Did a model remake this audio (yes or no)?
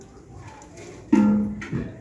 no